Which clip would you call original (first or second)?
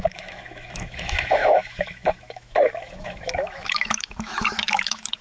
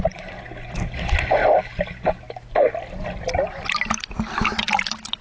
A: second